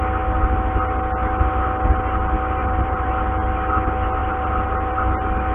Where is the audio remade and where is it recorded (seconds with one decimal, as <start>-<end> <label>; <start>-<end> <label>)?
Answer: 0.0-2.6 recorded; 2.6-3.1 remade; 3.1-4.2 recorded; 4.2-4.9 remade; 4.9-5.5 recorded